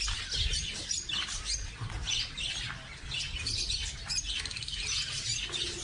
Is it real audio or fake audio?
real